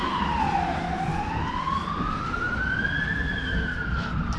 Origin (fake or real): real